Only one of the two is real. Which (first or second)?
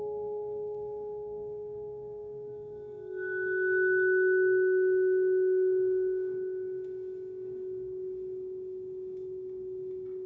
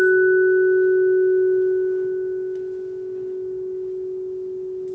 second